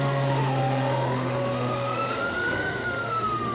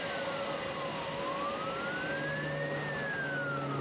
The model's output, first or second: first